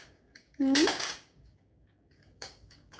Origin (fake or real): fake